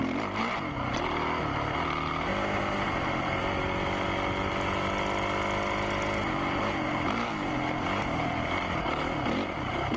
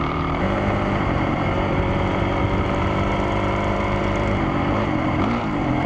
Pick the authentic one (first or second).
first